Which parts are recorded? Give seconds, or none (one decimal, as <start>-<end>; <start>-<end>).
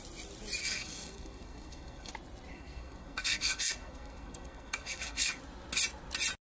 0.0-0.6; 2.1-2.5; 5.4-6.5